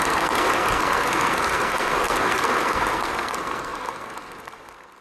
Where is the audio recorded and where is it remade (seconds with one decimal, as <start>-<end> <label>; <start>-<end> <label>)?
0.0-5.0 remade